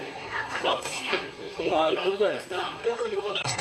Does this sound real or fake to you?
fake